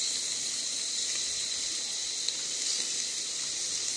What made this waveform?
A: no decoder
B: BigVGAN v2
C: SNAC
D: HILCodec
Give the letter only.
B